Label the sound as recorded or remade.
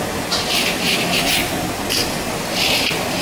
recorded